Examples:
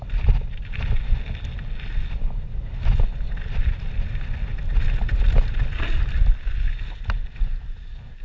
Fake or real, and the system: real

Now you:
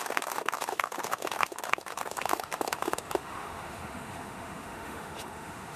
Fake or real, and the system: fake, autoencoder, DAC-VAE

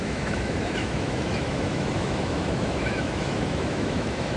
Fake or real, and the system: fake, autoencoder, DAC-VAE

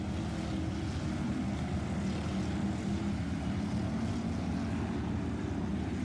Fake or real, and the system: real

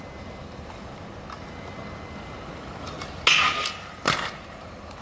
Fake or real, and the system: real